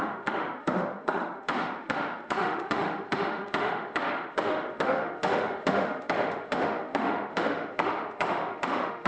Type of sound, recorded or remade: remade